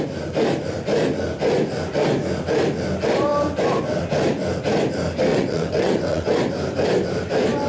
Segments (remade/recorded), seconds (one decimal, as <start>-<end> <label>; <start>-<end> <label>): 0.0-5.3 recorded; 5.3-6.3 remade; 6.3-7.7 recorded